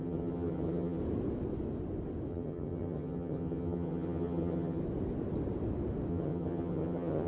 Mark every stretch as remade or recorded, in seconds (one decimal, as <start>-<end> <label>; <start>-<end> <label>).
0.0-1.0 remade; 1.0-2.3 recorded; 2.3-4.8 remade; 4.8-6.1 recorded; 6.1-7.3 remade